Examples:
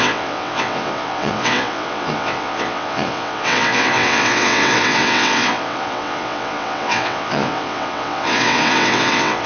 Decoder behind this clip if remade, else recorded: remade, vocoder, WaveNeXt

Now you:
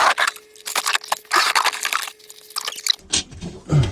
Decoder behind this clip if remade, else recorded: recorded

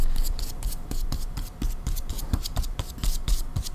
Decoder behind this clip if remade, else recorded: remade, vocoder, BigVGAN v2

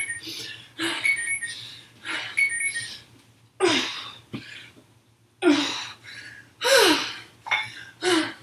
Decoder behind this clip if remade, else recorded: recorded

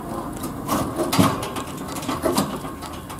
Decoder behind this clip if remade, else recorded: recorded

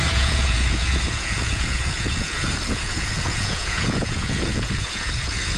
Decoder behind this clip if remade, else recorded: remade, vocoder, Vocos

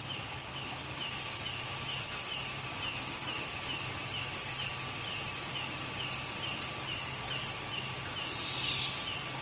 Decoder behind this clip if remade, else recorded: recorded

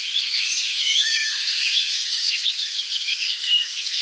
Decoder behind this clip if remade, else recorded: remade, autoencoder, DAC-VAE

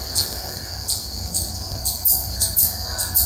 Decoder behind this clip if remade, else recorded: remade, codec, SNAC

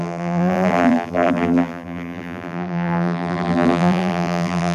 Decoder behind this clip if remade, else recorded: remade, vocoder, BigVGAN v2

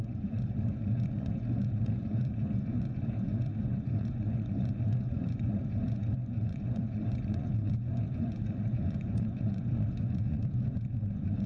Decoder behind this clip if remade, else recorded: remade, vocoder, Vocos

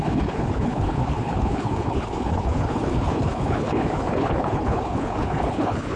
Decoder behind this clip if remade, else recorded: remade, codec, HILCodec